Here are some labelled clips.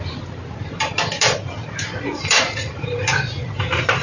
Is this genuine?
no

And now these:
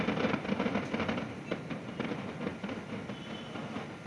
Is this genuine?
yes